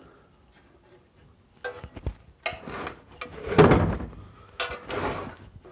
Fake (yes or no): no